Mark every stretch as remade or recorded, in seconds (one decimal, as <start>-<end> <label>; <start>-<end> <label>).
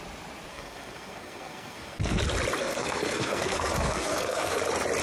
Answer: 0.0-0.5 recorded; 0.5-2.2 remade; 2.2-2.6 recorded; 2.6-4.6 remade; 4.6-5.0 recorded